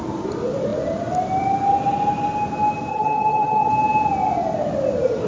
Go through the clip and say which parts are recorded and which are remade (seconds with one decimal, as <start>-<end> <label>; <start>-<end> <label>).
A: 0.0-2.9 recorded; 2.9-3.7 remade; 3.7-5.3 recorded